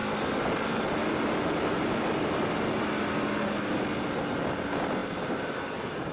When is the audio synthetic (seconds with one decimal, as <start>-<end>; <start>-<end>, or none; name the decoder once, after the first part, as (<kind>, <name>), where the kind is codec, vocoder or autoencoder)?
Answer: none